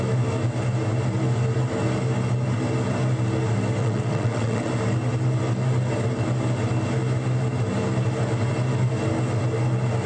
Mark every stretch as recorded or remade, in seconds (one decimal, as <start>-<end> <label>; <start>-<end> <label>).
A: 0.0-3.8 recorded; 3.8-4.7 remade; 4.7-10.1 recorded

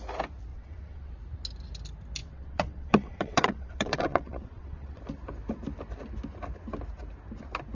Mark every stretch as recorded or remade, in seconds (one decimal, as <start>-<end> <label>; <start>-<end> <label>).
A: 0.0-0.5 recorded; 0.5-1.1 remade; 1.1-2.2 recorded; 2.2-5.0 remade; 5.0-7.7 recorded

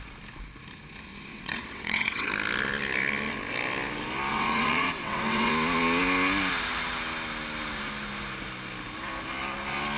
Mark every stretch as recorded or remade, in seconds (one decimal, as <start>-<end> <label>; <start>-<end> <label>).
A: 0.0-1.3 recorded; 1.3-2.3 remade; 2.3-4.3 recorded; 4.3-5.5 remade; 5.5-10.0 recorded

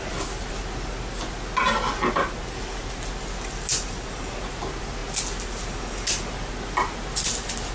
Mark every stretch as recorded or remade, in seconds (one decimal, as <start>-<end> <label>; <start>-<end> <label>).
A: 0.0-7.7 recorded

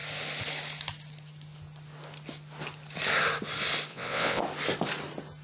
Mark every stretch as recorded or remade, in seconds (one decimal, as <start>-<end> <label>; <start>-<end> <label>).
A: 0.0-3.9 recorded; 3.9-4.4 remade; 4.4-5.4 recorded

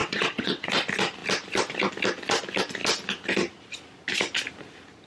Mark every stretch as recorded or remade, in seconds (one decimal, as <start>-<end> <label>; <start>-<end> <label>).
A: 0.0-0.7 remade; 0.7-5.1 recorded

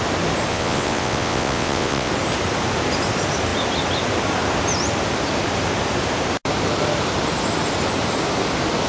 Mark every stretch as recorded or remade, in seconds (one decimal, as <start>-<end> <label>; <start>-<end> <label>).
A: 0.0-0.5 recorded; 0.5-2.1 remade; 2.1-8.9 recorded